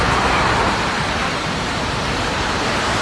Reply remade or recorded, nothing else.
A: remade